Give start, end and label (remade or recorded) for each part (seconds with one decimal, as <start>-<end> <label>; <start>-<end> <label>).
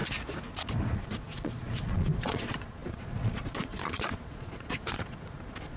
0.0-0.8 recorded; 0.8-5.8 remade